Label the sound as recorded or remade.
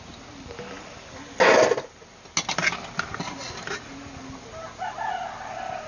recorded